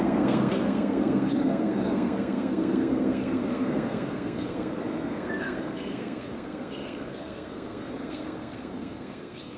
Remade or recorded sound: remade